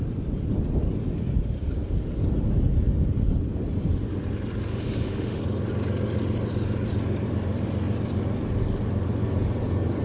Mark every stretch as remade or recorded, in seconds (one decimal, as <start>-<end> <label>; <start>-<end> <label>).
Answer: 0.0-4.7 recorded; 4.7-5.4 remade; 5.4-10.0 recorded